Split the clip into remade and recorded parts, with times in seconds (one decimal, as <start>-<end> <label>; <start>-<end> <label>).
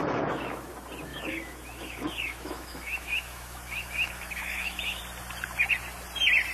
0.0-0.7 remade; 0.7-1.1 recorded; 1.1-5.0 remade; 5.0-6.5 recorded